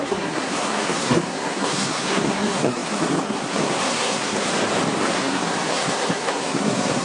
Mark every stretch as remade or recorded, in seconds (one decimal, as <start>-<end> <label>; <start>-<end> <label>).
0.0-4.5 remade; 4.5-5.0 recorded; 5.0-7.0 remade